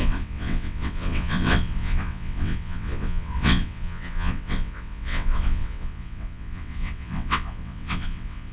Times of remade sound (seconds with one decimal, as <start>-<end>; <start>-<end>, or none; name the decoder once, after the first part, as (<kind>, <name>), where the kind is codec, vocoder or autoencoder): 0.0-8.5 (vocoder, WaveNeXt)